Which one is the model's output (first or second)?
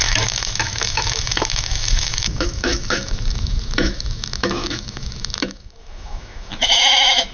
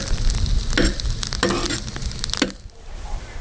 first